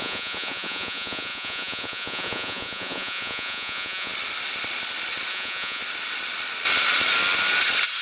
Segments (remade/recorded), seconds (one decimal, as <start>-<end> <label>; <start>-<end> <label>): 0.0-4.1 remade; 4.1-5.3 recorded; 5.3-5.8 remade; 5.8-8.0 recorded